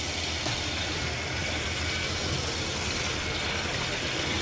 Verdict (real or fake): real